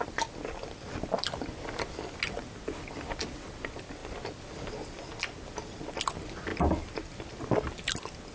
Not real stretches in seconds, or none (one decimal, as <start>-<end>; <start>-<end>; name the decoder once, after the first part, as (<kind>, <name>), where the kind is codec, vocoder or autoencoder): none